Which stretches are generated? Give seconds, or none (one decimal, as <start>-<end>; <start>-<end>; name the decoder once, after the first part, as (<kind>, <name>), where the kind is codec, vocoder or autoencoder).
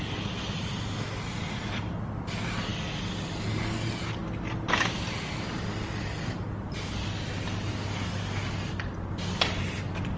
none